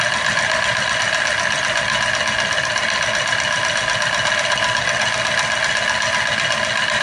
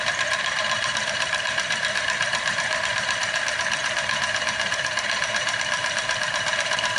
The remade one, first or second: second